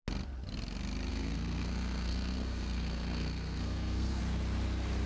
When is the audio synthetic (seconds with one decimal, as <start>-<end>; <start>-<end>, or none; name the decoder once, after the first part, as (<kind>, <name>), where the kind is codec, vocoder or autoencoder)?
1.1-4.2 (codec, SNAC)